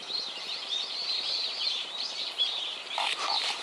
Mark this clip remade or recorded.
remade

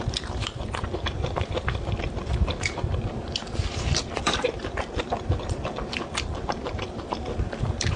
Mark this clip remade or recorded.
remade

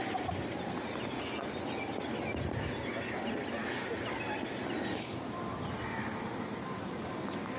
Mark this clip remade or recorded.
recorded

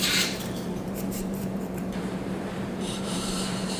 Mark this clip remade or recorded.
remade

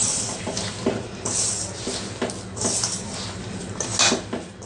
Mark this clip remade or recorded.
recorded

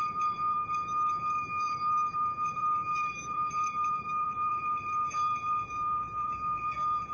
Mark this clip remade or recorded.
remade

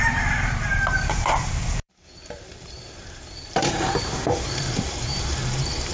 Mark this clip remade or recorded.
remade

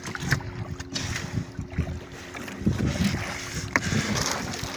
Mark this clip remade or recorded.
remade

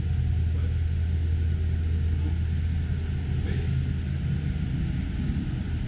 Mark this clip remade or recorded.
recorded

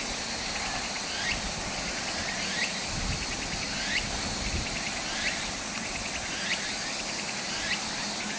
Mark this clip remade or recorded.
remade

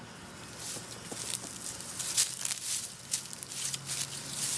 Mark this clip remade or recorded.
recorded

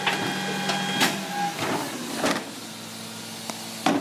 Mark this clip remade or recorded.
recorded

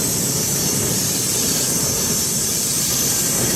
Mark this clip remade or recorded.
remade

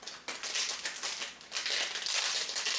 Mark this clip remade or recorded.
recorded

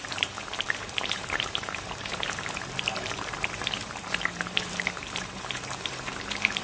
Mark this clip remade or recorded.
remade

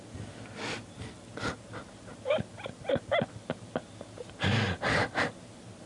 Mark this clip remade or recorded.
recorded